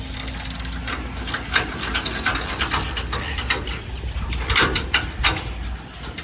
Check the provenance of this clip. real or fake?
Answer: real